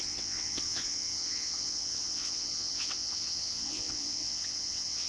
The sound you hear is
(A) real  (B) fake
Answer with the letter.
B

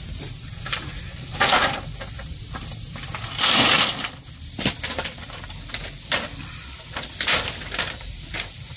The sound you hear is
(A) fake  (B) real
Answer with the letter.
A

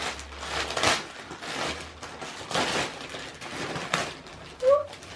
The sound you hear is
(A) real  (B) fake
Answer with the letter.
A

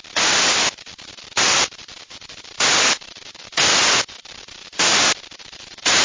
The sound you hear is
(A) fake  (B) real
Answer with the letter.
A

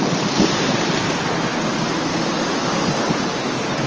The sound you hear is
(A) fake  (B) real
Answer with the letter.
B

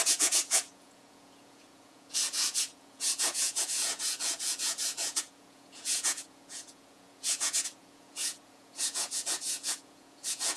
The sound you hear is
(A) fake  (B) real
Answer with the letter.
A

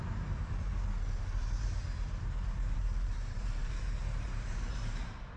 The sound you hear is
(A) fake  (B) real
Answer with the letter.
A